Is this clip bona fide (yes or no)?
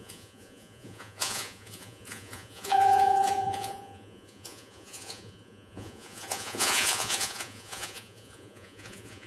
no